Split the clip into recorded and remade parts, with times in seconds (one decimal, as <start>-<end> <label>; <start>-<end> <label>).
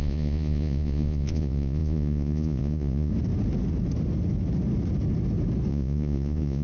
0.0-3.1 remade; 3.1-5.7 recorded; 5.7-6.6 remade